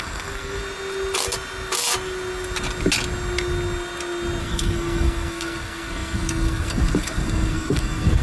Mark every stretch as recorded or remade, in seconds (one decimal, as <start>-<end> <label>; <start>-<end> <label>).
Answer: 0.0-0.6 remade; 0.6-4.4 recorded; 4.4-8.2 remade